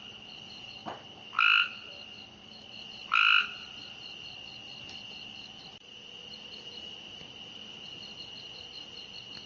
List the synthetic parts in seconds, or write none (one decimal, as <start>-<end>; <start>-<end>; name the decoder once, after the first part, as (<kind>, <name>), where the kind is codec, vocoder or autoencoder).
0.0-0.8 (vocoder, BigVGAN v2); 5.6-9.5